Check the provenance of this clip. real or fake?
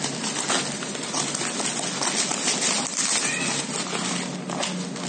real